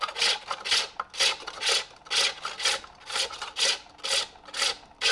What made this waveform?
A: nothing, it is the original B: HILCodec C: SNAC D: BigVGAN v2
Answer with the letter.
A